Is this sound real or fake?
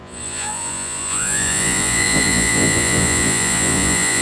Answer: fake